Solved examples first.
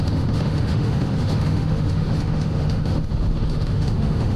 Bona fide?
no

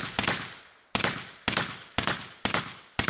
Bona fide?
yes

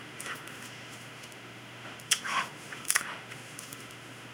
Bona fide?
no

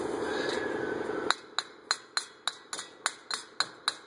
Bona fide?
yes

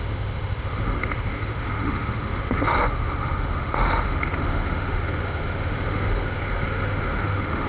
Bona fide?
no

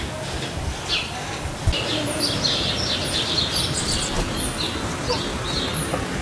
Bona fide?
yes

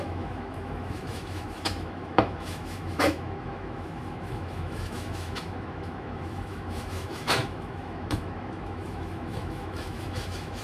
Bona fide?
no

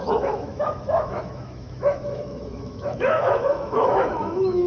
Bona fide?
no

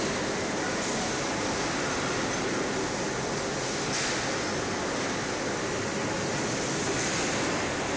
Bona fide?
yes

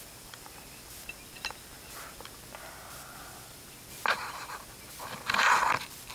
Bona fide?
yes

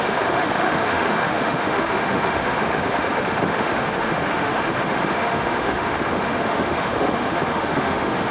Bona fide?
no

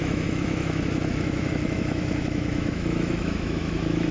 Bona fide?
no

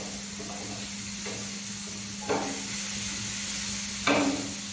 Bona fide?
yes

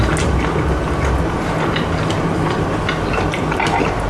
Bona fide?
yes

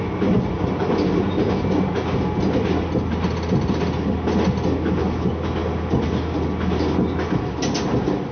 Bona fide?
yes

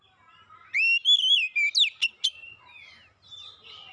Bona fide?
yes